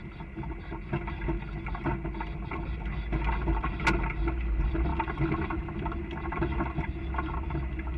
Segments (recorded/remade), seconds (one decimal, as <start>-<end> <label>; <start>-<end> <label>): 0.0-4.9 recorded; 4.9-5.7 remade; 5.7-8.0 recorded